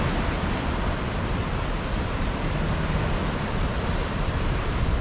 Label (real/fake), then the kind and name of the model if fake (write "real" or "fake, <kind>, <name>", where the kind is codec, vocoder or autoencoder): real